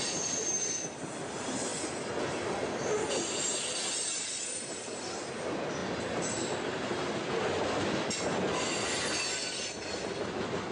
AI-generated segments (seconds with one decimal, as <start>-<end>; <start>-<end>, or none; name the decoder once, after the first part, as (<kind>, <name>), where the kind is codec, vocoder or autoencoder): none